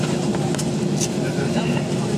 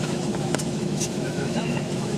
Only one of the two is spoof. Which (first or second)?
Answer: second